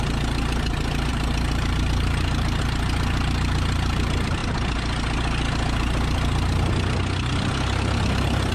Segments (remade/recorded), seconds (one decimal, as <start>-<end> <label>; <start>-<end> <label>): 0.0-1.1 recorded; 1.1-2.6 remade; 2.6-8.5 recorded